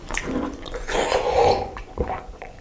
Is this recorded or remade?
remade